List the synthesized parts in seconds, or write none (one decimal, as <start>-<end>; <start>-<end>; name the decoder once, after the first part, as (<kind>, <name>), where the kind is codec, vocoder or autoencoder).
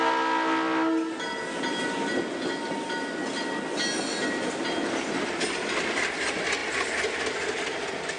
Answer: none